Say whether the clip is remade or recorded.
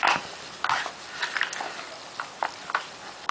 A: recorded